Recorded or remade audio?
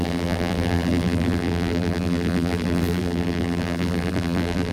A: remade